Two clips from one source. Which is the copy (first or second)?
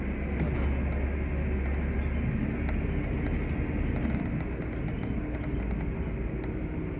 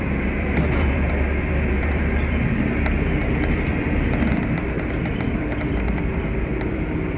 second